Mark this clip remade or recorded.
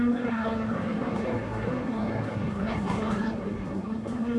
remade